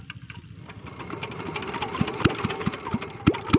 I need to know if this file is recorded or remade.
recorded